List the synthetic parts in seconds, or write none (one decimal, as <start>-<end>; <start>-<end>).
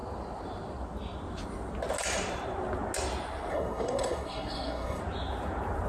3.5-5.0